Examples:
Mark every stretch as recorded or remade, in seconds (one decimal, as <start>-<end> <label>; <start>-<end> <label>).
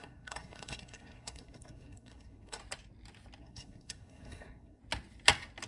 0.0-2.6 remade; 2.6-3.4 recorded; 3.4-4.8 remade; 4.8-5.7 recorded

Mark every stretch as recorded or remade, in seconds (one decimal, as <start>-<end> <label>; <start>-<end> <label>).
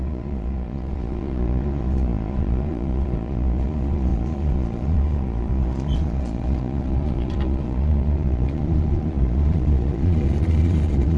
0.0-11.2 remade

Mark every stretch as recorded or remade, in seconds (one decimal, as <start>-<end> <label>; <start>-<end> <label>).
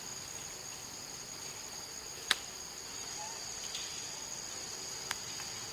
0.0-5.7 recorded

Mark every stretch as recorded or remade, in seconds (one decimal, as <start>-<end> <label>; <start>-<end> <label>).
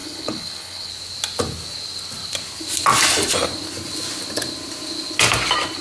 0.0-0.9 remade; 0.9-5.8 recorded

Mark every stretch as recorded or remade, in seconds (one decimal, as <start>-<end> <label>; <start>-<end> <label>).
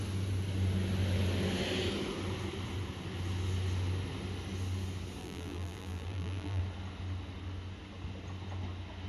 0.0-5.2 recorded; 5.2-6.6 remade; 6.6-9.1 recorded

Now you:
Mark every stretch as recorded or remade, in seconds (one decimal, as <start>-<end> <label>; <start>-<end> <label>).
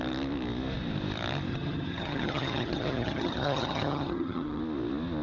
0.0-1.5 recorded; 1.5-4.6 remade; 4.6-5.2 recorded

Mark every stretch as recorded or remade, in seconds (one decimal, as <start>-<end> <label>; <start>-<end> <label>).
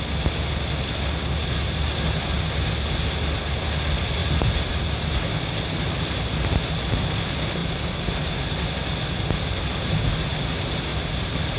0.0-1.4 recorded; 1.4-1.9 remade; 1.9-4.2 recorded; 4.2-4.8 remade; 4.8-7.6 recorded; 7.6-8.3 remade; 8.3-10.9 recorded; 10.9-11.6 remade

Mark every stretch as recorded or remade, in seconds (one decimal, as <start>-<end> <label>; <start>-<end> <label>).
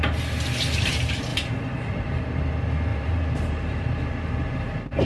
0.0-1.3 recorded; 1.3-2.2 remade; 2.2-2.9 recorded; 2.9-4.1 remade; 4.1-5.1 recorded